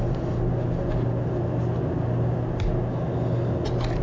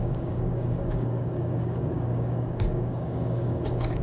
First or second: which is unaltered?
first